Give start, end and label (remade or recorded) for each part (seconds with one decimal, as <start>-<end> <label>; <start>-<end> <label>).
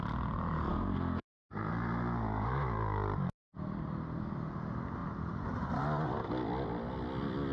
0.0-0.7 recorded; 0.7-1.7 remade; 1.7-7.5 recorded